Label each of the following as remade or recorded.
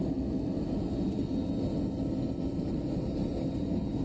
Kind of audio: recorded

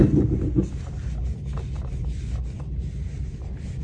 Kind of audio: recorded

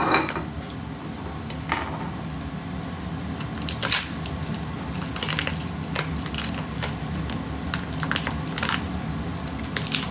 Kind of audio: recorded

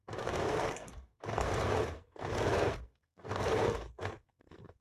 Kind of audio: remade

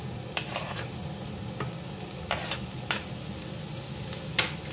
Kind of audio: recorded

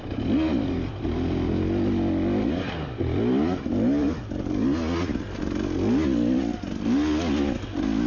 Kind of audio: recorded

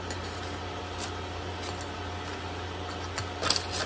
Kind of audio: recorded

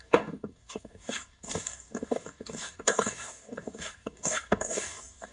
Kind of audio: remade